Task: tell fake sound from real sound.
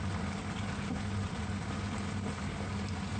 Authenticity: real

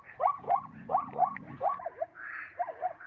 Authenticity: fake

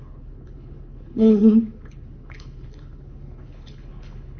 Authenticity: fake